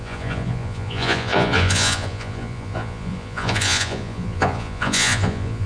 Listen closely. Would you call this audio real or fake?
fake